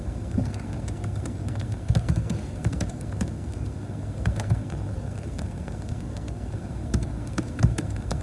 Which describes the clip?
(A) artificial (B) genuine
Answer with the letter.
A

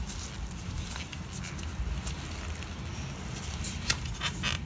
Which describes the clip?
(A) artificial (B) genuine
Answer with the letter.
B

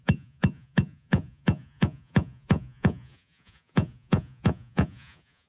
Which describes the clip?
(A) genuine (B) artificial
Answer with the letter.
B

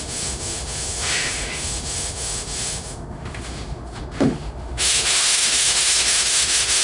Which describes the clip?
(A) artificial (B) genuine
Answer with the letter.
A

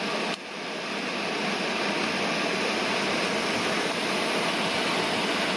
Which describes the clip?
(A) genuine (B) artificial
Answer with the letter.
A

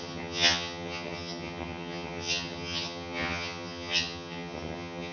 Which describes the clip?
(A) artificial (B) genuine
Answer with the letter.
A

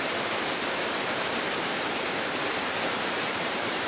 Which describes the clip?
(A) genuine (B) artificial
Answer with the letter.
B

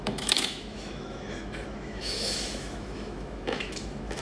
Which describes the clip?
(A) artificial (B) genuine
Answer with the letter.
A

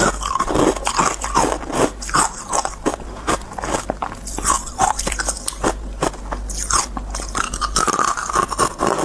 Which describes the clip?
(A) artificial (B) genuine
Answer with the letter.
B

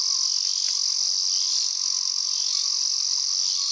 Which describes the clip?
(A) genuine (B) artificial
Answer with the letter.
A